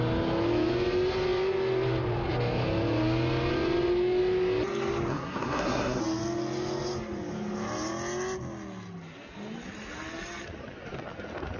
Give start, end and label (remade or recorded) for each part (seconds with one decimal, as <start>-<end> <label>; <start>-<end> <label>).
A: 0.0-5.1 recorded; 5.1-6.0 remade; 6.0-11.6 recorded